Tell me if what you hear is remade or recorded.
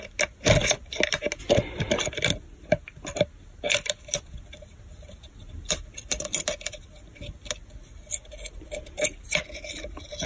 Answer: recorded